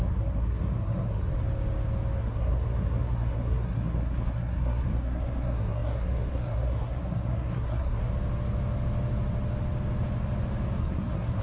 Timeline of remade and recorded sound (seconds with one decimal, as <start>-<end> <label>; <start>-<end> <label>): 0.0-1.3 remade; 1.3-2.2 recorded; 2.2-8.1 remade; 8.1-10.8 recorded; 10.8-11.4 remade